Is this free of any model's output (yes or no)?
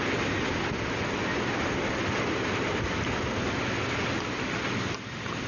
yes